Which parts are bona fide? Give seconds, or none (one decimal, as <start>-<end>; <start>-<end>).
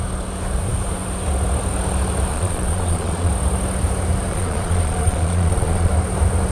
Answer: 0.0-2.3; 3.3-4.3; 5.9-6.5